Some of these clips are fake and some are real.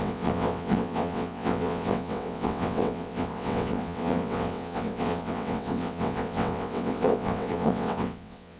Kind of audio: fake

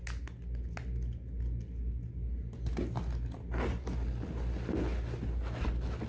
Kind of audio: real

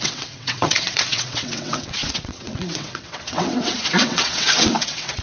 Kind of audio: fake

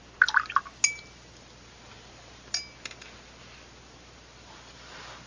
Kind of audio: real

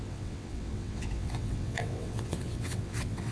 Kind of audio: fake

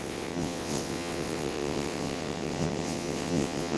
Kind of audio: fake